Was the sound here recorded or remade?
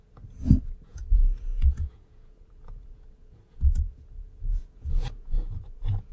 remade